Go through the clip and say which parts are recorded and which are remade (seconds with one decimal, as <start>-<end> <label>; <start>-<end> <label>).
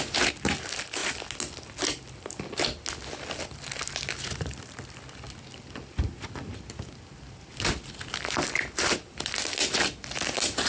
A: 0.0-10.7 recorded